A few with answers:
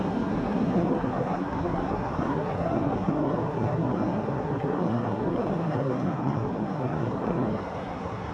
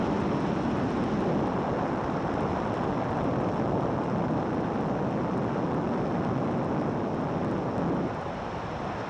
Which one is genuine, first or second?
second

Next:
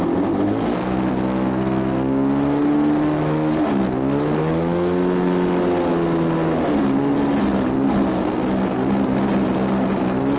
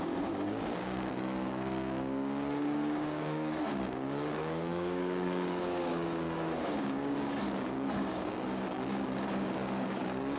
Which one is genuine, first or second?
first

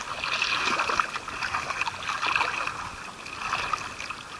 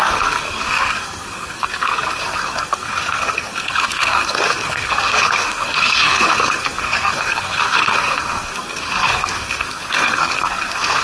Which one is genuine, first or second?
first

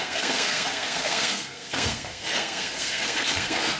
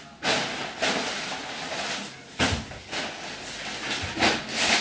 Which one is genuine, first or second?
second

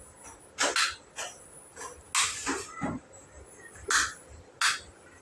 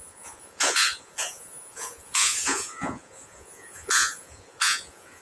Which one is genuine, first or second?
first